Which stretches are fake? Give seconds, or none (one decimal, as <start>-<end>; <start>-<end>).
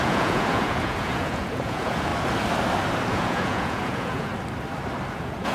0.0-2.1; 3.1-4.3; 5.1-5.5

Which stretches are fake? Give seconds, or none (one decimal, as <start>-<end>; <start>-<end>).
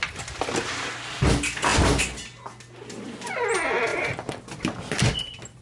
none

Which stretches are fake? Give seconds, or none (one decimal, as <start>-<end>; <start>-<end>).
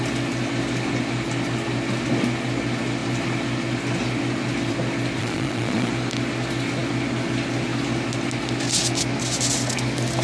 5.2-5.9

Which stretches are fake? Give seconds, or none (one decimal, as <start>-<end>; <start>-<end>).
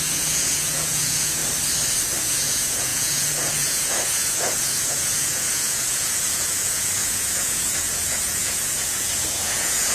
0.0-1.4; 2.2-9.9